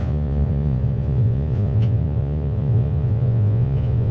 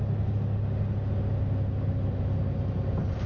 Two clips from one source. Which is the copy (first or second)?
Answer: first